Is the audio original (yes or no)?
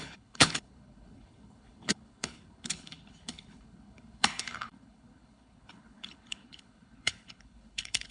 no